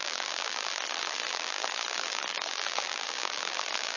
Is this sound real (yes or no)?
no